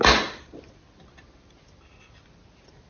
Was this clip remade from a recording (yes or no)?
no